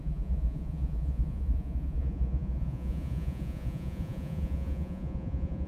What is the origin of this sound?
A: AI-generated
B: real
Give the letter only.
A